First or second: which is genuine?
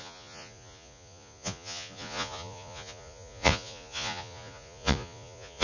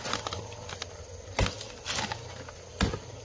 second